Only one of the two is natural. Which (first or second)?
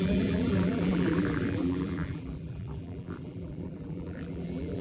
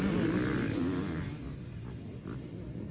second